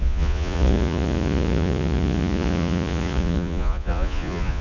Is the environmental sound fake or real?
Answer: fake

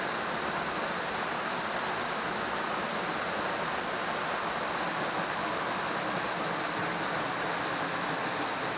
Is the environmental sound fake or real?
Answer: real